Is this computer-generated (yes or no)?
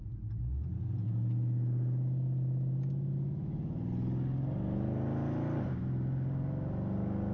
no